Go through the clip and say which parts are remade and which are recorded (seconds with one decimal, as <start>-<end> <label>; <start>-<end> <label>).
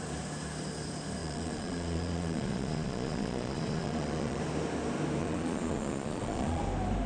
0.0-1.2 recorded; 1.2-4.4 remade; 4.4-5.2 recorded; 5.2-6.6 remade; 6.6-7.1 recorded